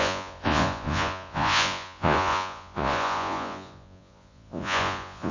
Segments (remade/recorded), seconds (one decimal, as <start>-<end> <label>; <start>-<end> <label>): 0.0-5.3 remade